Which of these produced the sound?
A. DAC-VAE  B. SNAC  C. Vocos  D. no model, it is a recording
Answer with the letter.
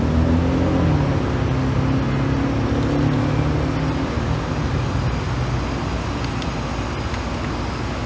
D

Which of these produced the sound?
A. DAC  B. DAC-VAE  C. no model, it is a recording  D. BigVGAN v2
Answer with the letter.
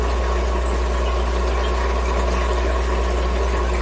C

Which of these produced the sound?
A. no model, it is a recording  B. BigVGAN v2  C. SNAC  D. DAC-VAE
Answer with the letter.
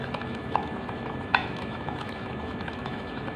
D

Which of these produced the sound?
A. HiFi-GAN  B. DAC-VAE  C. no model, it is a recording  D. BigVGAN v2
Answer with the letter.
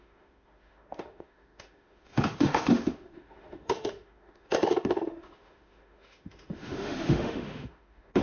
B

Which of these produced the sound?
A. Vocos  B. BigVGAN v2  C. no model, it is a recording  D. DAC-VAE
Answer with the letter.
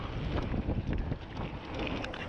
C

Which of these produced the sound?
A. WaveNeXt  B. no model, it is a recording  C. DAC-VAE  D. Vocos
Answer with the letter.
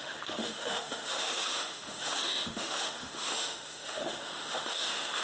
C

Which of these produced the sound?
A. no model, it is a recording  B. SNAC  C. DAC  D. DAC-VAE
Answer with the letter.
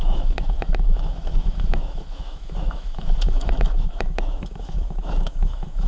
D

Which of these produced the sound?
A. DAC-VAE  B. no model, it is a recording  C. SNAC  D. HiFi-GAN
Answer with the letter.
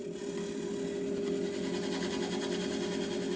B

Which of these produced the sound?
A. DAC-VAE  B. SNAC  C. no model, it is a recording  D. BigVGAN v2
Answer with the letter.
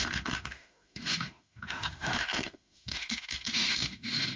A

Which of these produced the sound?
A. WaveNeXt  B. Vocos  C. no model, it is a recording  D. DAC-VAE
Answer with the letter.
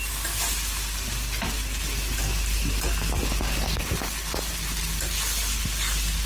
C